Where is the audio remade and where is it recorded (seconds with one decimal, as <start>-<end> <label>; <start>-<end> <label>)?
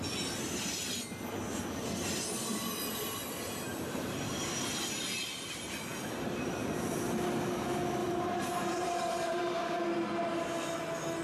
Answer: 0.0-3.7 recorded; 3.7-4.3 remade; 4.3-8.0 recorded; 8.0-9.8 remade; 9.8-11.2 recorded